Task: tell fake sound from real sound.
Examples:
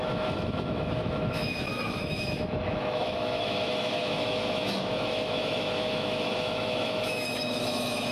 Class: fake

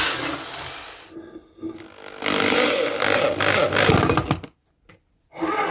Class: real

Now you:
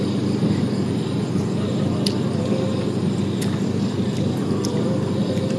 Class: real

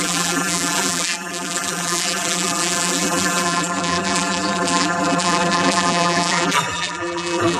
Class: fake